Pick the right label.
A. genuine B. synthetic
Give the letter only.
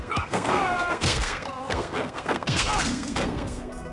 B